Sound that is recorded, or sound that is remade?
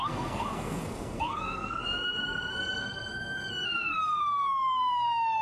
remade